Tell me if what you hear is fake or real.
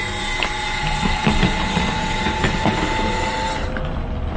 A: real